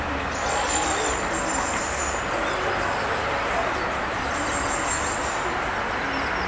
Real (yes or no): yes